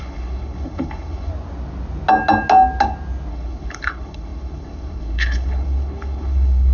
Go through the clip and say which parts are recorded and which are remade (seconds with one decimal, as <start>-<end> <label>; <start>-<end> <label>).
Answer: 0.0-1.3 remade; 1.3-3.3 recorded; 3.3-6.7 remade